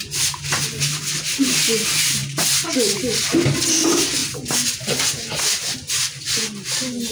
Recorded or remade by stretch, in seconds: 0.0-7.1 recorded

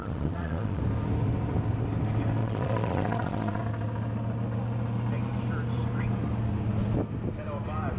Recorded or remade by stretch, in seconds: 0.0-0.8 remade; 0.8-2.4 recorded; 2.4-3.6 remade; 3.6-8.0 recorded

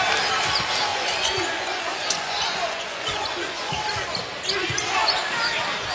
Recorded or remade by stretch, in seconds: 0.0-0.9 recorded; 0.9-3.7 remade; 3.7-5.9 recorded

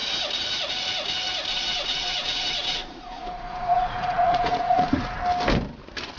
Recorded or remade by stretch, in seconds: 0.0-1.5 recorded; 1.5-5.2 remade; 5.2-6.2 recorded